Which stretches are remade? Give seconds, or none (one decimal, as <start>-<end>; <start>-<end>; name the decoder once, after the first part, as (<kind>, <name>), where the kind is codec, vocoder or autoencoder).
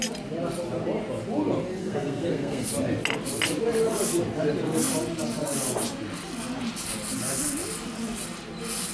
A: 1.8-2.7 (codec, SNAC)